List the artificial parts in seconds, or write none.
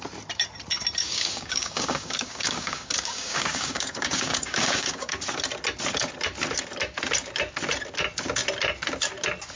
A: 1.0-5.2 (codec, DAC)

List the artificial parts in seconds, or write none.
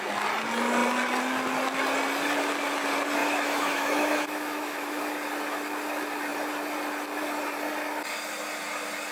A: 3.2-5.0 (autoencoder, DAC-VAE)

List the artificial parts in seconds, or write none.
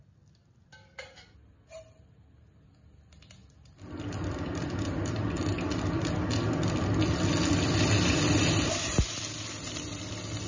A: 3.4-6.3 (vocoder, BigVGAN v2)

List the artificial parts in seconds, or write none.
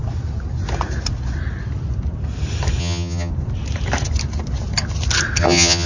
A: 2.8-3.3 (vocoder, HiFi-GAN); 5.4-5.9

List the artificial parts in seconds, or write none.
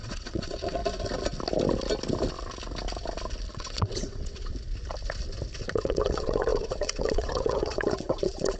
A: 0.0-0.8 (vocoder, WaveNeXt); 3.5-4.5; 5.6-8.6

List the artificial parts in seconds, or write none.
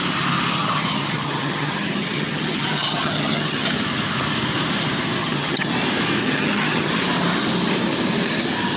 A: 0.6-3.7 (vocoder, HiFi-GAN); 5.2-5.7; 6.2-6.9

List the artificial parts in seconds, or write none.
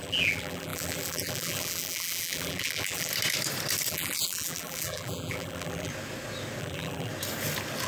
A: 0.0-3.1 (vocoder, BigVGAN v2); 3.9-5.9; 6.6-7.1